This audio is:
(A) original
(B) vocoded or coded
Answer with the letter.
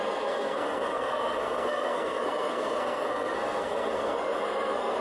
B